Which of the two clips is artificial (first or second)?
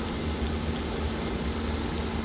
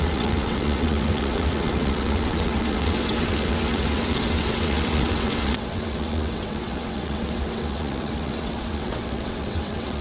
second